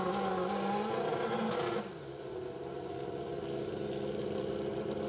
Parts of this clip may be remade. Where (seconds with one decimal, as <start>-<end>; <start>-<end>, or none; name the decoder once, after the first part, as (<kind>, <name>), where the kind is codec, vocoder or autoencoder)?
none